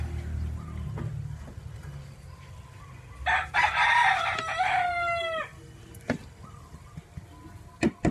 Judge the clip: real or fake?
real